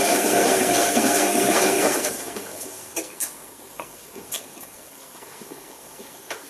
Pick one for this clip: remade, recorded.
remade